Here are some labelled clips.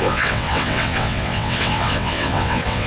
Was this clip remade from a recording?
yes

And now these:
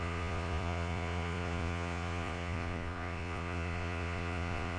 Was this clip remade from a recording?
yes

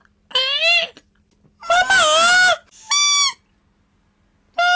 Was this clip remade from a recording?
no